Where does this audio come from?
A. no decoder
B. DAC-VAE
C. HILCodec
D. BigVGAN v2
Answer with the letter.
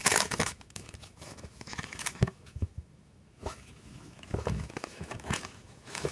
B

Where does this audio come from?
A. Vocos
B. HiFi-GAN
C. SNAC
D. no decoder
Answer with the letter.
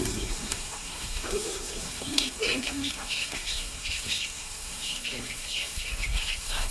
C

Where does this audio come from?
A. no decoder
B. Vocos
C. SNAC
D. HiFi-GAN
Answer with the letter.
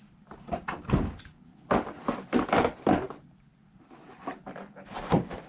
A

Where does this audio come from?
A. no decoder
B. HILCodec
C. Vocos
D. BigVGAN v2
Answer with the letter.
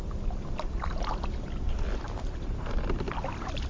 A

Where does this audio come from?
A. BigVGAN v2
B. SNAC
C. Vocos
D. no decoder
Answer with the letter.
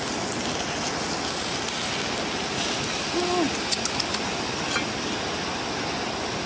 D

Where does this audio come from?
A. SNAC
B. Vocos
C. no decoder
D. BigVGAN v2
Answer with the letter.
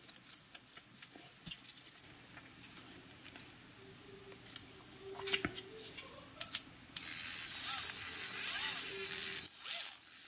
C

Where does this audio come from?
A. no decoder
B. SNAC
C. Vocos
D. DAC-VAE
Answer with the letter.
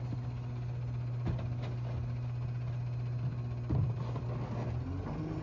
A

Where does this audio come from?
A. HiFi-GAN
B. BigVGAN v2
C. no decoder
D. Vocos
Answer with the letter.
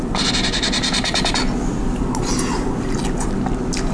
C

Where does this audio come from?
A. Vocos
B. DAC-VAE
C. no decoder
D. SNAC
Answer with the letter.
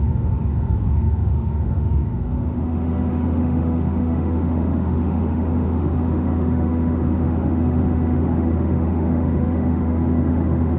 B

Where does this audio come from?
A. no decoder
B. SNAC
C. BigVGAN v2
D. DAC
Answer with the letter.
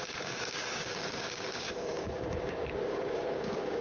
D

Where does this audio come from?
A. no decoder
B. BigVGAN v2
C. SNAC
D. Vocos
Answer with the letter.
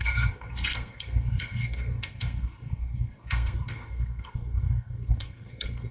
C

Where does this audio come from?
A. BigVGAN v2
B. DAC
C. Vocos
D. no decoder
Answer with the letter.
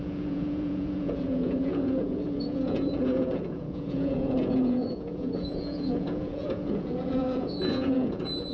C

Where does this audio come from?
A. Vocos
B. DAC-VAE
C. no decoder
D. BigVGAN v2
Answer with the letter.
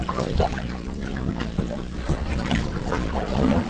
A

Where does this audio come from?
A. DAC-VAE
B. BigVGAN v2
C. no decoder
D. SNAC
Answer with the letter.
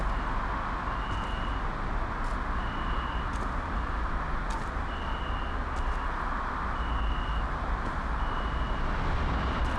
C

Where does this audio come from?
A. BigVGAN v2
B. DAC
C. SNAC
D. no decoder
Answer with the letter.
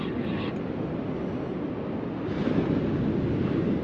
D